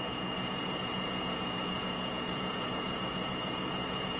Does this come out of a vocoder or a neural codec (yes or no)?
yes